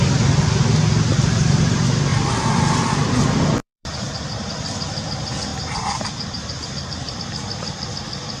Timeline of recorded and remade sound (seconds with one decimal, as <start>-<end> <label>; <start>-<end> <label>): 0.0-3.6 recorded; 3.6-4.5 remade; 4.5-5.5 recorded; 5.5-7.2 remade; 7.2-8.4 recorded